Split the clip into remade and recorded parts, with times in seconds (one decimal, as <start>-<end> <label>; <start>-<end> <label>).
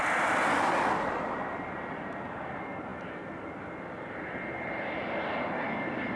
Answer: 0.0-6.2 recorded